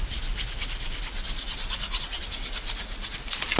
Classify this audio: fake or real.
real